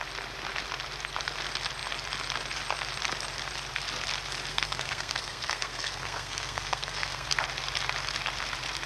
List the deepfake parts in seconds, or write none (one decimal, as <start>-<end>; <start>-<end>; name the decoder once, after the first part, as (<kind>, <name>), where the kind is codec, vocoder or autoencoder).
4.5-7.3 (codec, SNAC)